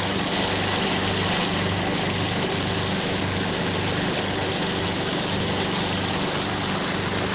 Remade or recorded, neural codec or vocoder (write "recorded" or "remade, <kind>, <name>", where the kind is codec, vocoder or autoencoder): recorded